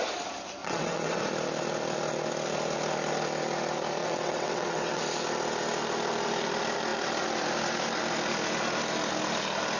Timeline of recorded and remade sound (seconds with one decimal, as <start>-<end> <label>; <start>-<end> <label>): 0.0-0.6 recorded; 0.6-1.2 remade; 1.2-4.0 recorded; 4.0-5.0 remade; 5.0-9.8 recorded